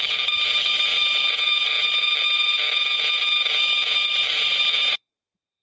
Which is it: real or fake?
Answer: fake